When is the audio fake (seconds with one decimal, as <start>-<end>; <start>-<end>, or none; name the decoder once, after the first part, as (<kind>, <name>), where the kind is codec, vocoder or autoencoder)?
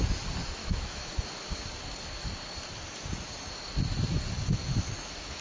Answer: 0.6-1.1 (autoencoder, DAC-VAE)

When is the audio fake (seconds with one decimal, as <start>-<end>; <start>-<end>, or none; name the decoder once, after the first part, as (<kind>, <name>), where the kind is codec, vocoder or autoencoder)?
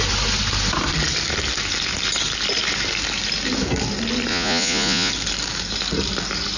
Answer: 4.3-5.1 (vocoder, Vocos)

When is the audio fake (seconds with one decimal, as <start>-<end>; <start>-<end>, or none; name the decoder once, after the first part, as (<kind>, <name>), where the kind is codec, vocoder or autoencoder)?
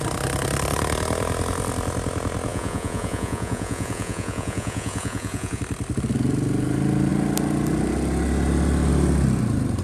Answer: 2.5-5.6 (vocoder, Vocos)